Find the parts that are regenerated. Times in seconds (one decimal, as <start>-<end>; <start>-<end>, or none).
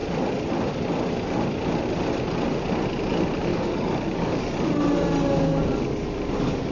3.5-4.4